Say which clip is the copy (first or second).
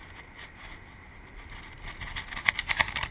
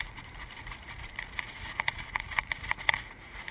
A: second